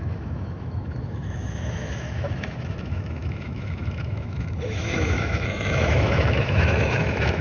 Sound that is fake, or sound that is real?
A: fake